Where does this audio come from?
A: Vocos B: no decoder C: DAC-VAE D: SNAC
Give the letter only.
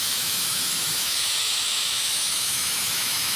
C